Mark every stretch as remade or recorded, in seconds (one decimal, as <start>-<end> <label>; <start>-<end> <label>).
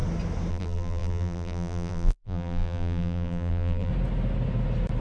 0.0-0.5 recorded; 0.5-3.9 remade; 3.9-5.0 recorded